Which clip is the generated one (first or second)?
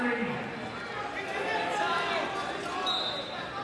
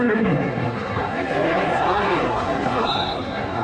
second